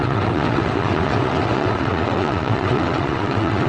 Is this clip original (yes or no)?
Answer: no